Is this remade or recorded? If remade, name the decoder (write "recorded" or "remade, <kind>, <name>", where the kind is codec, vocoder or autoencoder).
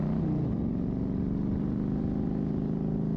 recorded